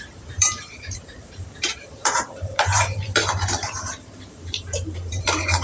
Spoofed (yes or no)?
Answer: yes